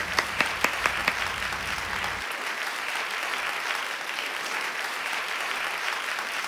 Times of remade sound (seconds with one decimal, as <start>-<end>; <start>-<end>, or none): 0.0-1.0; 4.4-6.5